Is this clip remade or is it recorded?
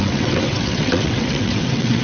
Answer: remade